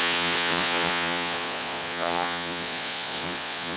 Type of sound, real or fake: fake